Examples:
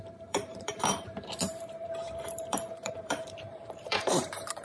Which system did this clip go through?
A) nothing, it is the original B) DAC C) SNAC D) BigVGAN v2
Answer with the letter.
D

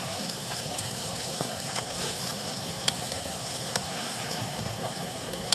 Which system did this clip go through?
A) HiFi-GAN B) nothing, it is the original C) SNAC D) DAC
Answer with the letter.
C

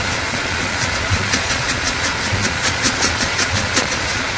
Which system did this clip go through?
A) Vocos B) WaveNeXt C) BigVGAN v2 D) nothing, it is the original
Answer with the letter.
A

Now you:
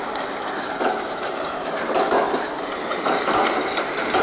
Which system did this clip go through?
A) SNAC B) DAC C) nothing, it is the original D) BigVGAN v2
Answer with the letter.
D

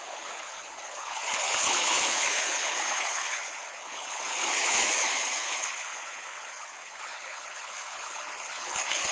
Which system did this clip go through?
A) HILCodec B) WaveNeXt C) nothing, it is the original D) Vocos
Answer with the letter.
A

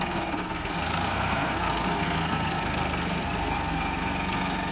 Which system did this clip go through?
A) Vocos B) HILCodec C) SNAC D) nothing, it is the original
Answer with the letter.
C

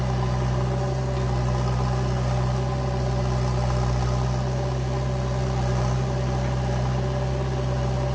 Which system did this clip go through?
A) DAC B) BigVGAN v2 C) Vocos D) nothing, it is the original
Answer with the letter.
D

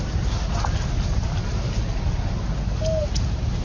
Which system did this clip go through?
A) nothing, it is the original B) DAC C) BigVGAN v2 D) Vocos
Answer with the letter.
A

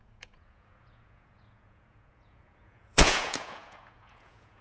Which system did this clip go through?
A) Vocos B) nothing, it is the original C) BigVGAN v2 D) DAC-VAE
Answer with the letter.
A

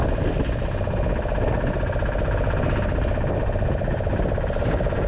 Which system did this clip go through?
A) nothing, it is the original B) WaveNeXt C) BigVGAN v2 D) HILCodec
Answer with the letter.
A